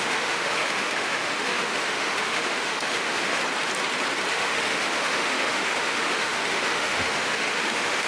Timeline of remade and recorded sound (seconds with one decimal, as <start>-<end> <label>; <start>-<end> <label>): 0.0-3.4 remade; 3.4-4.3 recorded; 4.3-8.1 remade